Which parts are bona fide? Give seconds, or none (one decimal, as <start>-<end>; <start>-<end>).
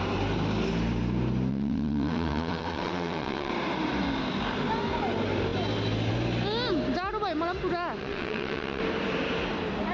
0.0-1.5; 3.5-8.0; 8.8-9.9